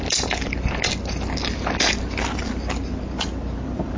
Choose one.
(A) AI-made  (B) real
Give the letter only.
B